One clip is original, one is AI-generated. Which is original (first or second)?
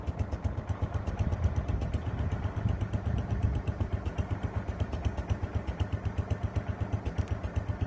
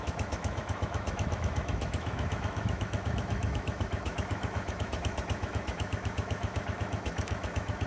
first